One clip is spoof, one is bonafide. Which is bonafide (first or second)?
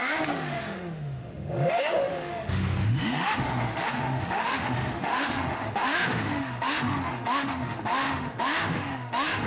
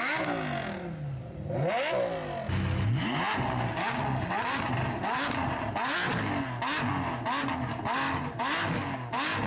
second